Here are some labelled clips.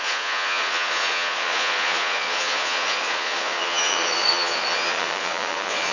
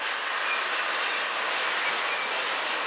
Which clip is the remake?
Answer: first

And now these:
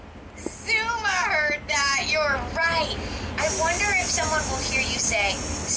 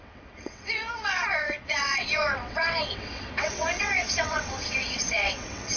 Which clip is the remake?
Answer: second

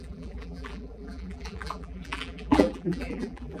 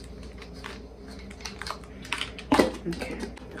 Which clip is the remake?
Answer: first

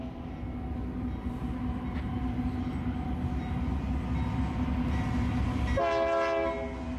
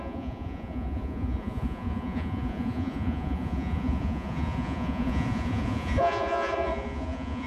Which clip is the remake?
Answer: second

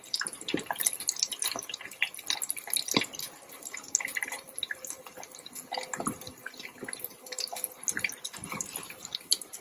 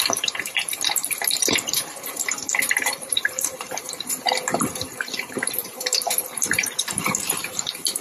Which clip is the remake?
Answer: second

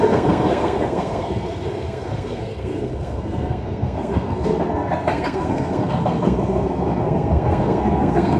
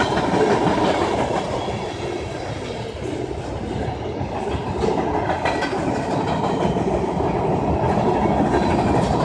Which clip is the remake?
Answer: first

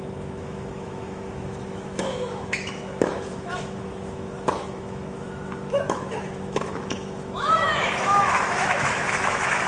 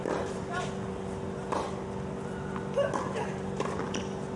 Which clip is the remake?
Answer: first